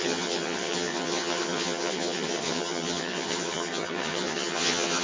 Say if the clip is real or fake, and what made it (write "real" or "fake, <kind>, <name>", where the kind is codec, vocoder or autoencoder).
fake, vocoder, HiFi-GAN